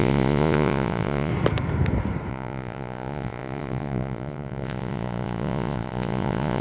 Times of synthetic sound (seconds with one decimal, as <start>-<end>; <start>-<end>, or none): 0.0-1.3; 2.3-6.6